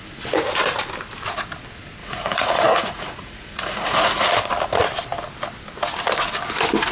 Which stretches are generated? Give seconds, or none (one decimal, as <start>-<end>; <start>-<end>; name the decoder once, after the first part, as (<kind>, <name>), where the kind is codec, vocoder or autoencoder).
2.0-4.3 (vocoder, Vocos)